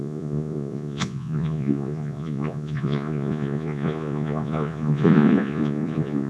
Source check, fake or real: fake